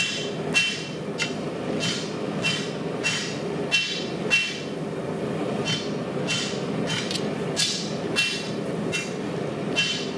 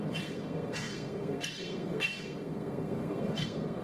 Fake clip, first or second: second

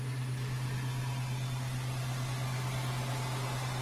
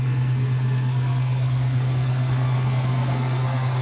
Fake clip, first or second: second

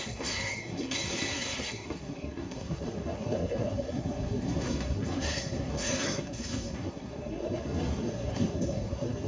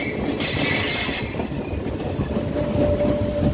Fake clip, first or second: first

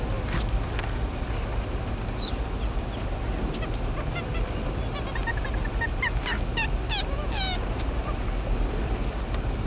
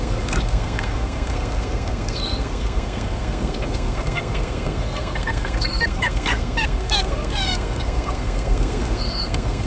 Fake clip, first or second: second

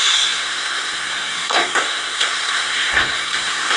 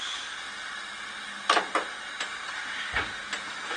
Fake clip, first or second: first